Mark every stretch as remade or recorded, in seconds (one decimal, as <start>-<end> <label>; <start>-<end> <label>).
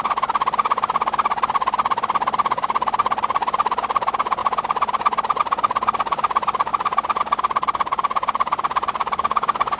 0.0-9.8 recorded